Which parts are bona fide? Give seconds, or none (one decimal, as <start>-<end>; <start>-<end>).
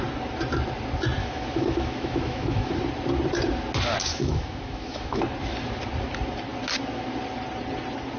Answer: 0.0-1.2; 2.7-4.1; 5.2-8.2